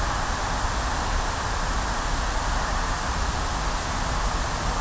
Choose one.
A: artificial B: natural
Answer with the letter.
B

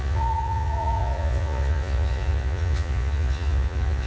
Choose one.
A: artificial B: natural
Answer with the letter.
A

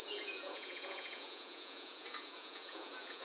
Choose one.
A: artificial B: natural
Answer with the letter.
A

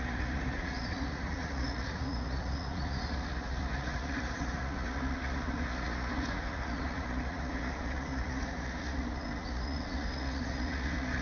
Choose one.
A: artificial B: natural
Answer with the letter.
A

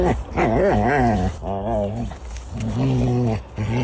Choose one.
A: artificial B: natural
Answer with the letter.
B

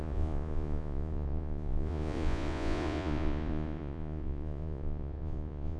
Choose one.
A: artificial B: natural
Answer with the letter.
A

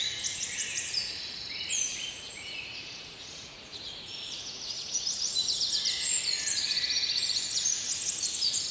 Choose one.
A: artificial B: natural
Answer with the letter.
A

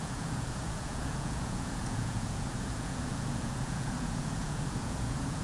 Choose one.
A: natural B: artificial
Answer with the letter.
B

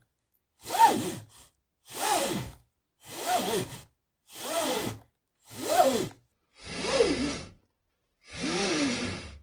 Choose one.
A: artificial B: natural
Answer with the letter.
B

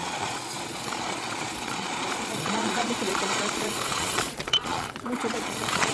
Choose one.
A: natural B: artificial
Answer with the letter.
B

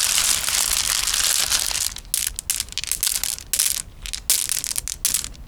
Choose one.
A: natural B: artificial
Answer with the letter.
A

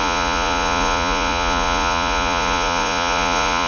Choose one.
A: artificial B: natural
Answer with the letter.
A